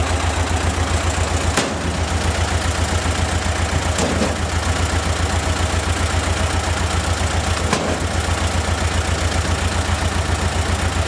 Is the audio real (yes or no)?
yes